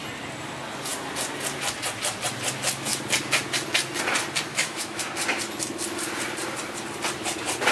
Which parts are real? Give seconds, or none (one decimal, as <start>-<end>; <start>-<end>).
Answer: 0.0-4.5; 5.0-7.7